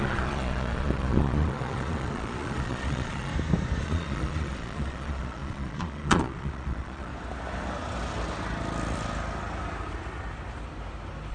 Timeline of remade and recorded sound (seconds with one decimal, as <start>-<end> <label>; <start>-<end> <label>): 0.0-3.3 remade; 3.3-3.8 recorded; 3.8-7.1 remade; 7.1-11.3 recorded